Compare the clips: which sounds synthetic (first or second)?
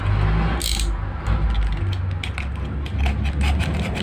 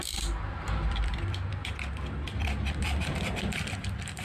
second